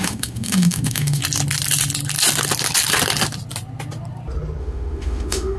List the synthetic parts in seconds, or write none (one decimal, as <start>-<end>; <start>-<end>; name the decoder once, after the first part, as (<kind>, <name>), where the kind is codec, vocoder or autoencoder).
0.0-1.2 (autoencoder, DAC-VAE); 4.6-5.6